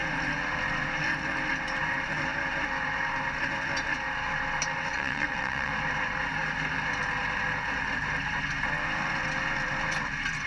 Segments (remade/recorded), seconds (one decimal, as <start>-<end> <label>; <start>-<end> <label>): 0.0-4.9 recorded; 4.9-5.7 remade; 5.7-10.5 recorded